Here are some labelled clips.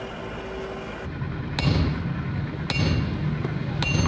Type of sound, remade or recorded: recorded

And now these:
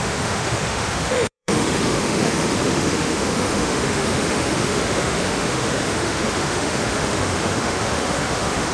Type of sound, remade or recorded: remade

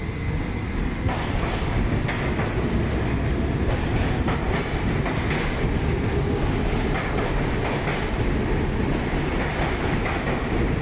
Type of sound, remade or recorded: recorded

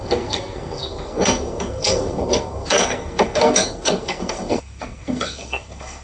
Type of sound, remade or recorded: remade